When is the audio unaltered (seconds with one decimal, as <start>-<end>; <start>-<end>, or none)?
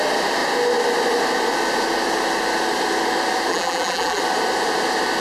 0.0-3.5; 4.2-5.2